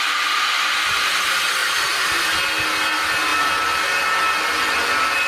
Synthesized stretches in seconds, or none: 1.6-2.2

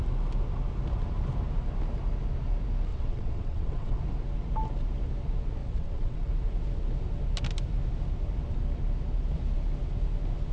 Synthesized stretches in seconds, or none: 2.9-4.0; 5.6-6.3

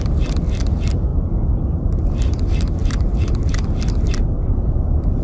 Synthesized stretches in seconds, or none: none

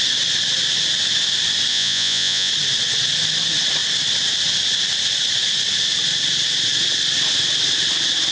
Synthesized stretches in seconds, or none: 1.7-2.5

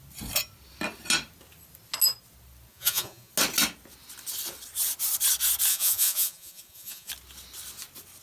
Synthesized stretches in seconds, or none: 2.7-3.3; 5.7-7.1

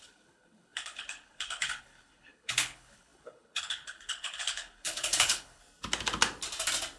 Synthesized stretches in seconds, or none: 0.0-5.6

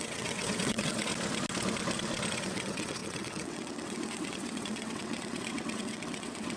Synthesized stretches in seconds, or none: 0.0-1.1; 2.3-6.6